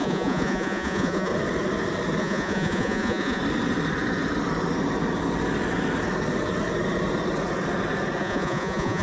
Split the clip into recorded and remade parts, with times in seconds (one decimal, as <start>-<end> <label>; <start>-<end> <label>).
0.0-1.3 remade; 1.3-2.2 recorded; 2.2-3.4 remade; 3.4-8.2 recorded; 8.2-9.0 remade